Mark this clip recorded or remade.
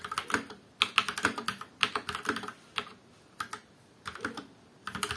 recorded